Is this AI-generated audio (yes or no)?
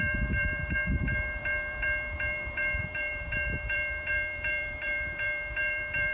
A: yes